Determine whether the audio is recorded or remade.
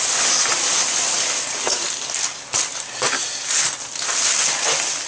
recorded